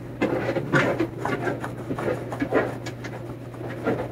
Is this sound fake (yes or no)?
no